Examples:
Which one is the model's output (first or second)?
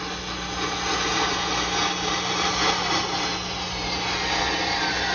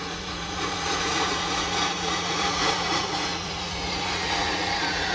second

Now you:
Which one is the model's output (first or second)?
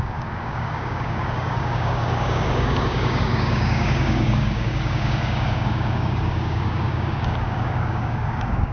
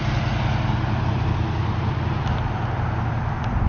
first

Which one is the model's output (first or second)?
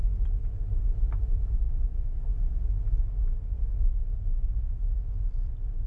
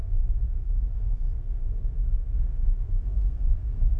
second